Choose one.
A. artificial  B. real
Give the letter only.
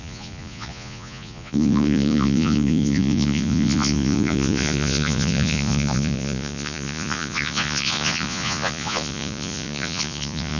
A